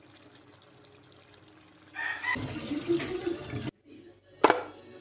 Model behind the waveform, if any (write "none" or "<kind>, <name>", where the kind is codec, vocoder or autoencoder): none